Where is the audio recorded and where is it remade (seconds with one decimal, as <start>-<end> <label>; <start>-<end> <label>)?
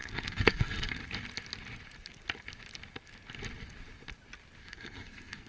0.0-1.0 remade; 1.0-4.6 recorded; 4.6-5.5 remade